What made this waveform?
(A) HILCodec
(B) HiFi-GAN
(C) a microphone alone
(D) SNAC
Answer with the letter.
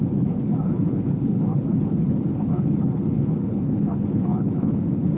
A